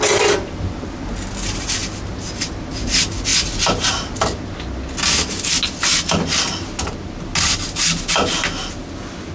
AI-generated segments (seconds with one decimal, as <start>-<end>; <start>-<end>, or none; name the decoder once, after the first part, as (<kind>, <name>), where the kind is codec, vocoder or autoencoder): none